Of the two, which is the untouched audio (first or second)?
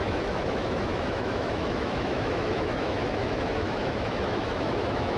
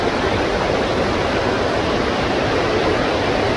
second